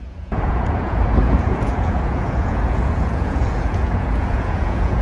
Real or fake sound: fake